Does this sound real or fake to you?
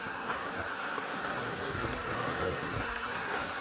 fake